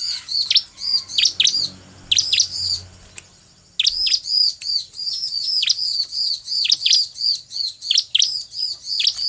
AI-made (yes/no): no